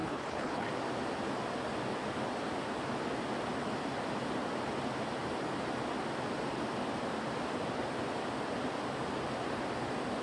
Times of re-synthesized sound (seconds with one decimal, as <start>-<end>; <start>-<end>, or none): 0.0-0.7